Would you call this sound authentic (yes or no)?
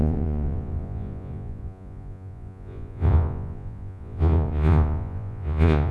no